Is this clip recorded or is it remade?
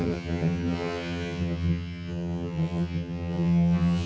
remade